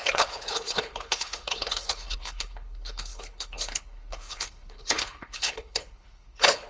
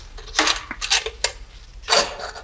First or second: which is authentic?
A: second